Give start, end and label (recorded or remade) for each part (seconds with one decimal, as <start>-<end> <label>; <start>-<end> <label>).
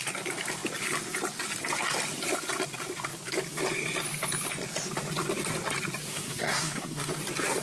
0.0-6.1 recorded; 6.1-7.1 remade; 7.1-7.6 recorded